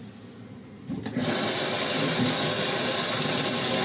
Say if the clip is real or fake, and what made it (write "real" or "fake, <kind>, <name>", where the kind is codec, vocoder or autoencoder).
real